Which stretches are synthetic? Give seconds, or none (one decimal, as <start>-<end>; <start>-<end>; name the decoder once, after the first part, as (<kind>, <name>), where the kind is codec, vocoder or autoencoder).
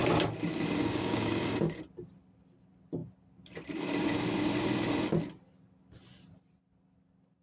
0.8-1.8 (codec, DAC)